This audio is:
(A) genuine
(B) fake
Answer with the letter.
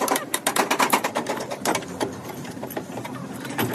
B